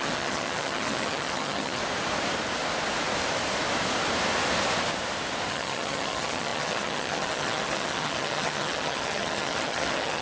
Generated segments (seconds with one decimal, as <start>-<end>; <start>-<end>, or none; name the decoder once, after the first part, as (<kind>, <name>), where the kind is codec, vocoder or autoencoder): 0.0-1.8 (vocoder, HiFi-GAN); 5.5-10.2